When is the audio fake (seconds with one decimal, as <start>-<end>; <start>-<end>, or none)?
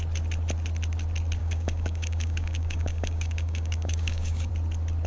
1.4-4.5